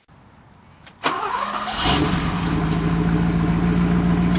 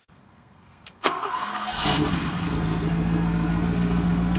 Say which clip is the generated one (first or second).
second